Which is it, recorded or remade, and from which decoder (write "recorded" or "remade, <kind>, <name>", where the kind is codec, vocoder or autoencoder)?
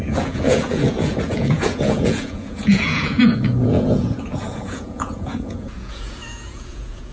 remade, vocoder, Vocos